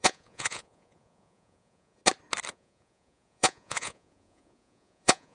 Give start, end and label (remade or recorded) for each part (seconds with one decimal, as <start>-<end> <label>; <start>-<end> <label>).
0.0-2.0 remade; 2.0-2.5 recorded; 2.5-5.3 remade